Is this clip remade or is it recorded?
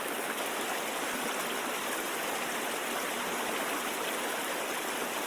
recorded